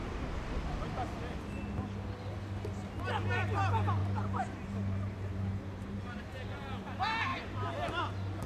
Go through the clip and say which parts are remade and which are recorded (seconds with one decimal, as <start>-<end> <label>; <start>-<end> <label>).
0.0-0.6 remade; 0.6-4.0 recorded; 4.0-6.2 remade; 6.2-7.3 recorded; 7.3-8.0 remade; 8.0-8.5 recorded